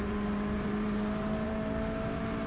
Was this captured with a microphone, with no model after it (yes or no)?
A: no